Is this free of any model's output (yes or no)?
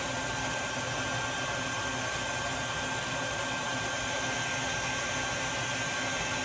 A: yes